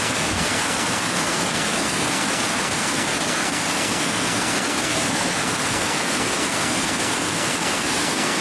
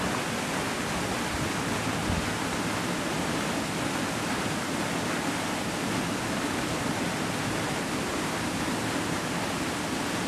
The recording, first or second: second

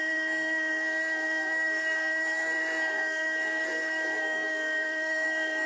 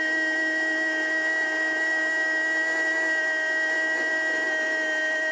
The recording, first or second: second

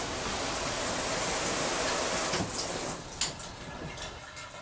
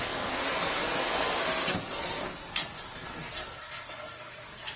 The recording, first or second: first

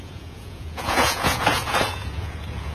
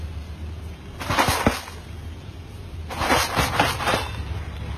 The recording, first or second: second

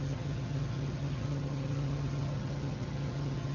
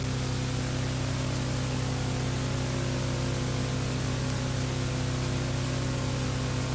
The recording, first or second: second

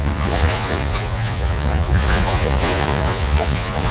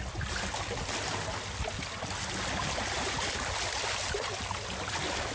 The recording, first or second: second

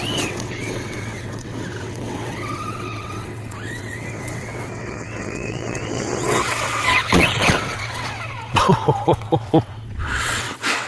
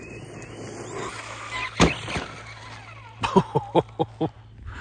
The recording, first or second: second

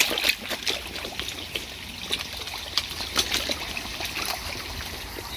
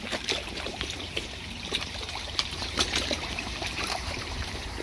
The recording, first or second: first